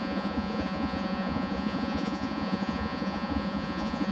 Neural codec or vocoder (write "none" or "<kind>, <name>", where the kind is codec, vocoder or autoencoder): vocoder, Vocos